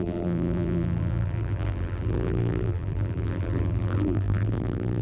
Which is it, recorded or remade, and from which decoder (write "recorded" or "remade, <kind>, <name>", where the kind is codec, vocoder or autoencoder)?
remade, vocoder, BigVGAN v2